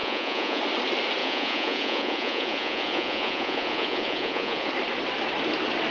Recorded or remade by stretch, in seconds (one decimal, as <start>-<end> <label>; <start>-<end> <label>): 0.0-0.6 remade; 0.6-1.2 recorded; 1.2-4.7 remade; 4.7-5.9 recorded